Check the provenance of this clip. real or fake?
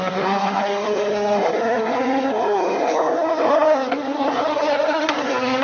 fake